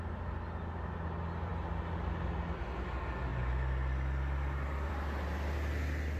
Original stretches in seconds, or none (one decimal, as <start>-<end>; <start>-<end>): 0.0-6.2